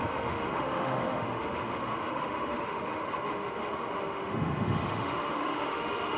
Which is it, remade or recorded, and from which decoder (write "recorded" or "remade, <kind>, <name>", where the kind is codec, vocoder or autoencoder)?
remade, autoencoder, DAC-VAE